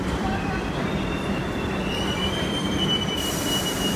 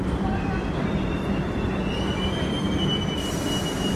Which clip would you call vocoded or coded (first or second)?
first